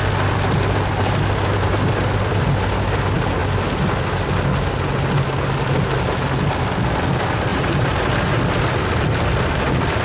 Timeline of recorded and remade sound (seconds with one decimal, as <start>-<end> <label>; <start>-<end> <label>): 0.0-10.0 recorded